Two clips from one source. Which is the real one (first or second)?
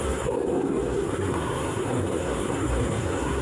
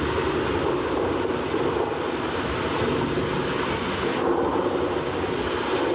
second